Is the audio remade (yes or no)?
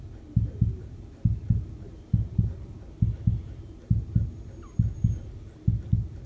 no